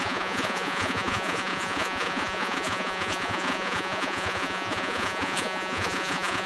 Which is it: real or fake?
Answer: fake